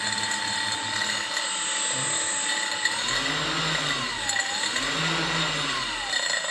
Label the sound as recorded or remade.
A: recorded